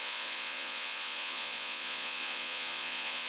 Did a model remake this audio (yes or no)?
yes